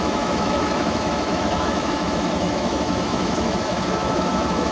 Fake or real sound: fake